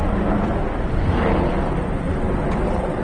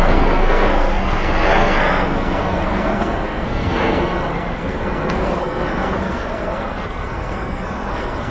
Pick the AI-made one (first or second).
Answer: second